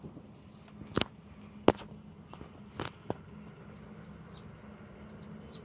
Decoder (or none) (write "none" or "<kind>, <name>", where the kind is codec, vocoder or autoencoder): none